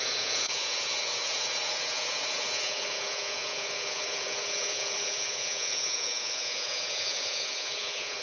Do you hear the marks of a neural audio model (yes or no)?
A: yes